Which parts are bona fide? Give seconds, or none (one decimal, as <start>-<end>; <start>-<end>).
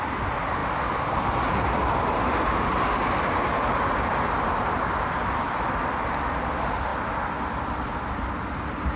0.0-9.0